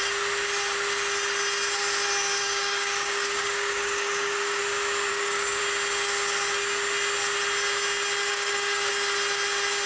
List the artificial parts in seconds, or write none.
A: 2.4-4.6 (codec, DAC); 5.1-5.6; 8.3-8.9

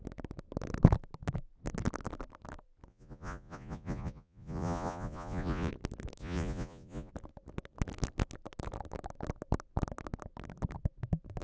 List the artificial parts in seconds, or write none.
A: 2.9-5.7 (vocoder, Vocos); 6.2-7.1